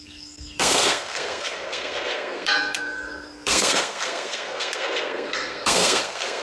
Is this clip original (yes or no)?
no